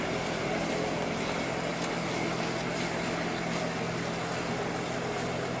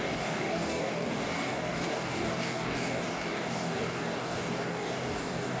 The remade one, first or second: second